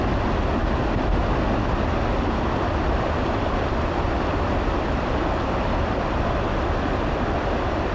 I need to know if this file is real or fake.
real